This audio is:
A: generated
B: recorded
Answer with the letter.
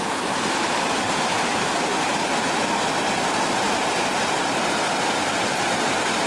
B